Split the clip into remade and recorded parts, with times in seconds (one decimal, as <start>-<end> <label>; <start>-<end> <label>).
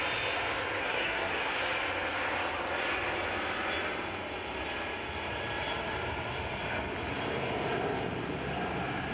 0.0-0.8 recorded; 0.8-1.6 remade; 1.6-9.1 recorded